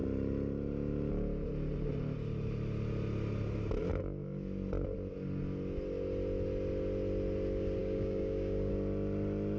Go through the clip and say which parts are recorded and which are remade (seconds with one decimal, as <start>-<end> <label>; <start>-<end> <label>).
0.0-7.8 recorded; 7.8-8.7 remade; 8.7-9.6 recorded